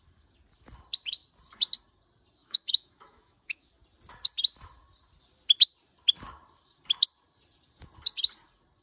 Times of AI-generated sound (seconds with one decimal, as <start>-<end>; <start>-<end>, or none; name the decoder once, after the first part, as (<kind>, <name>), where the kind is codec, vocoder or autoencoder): 2.4-3.7 (autoencoder, DAC-VAE)